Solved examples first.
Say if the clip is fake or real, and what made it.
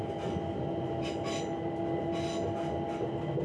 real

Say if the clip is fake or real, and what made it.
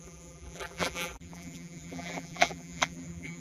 fake, vocoder, BigVGAN v2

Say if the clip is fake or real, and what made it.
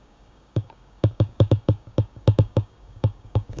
fake, codec, DAC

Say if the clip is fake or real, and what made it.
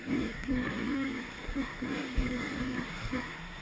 fake, codec, SNAC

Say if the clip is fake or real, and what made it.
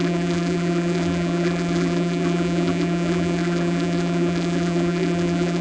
fake, vocoder, BigVGAN v2